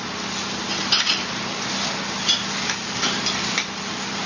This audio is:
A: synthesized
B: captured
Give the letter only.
B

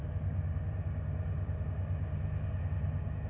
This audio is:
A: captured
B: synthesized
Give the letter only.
A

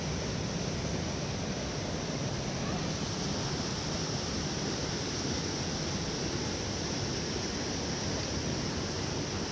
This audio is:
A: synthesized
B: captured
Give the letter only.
B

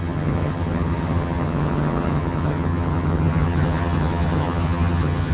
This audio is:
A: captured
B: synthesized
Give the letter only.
B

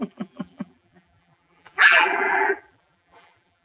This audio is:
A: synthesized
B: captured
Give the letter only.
A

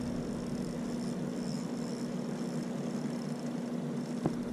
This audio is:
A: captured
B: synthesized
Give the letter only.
A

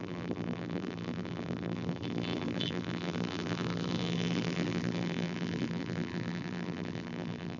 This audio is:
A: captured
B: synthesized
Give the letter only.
B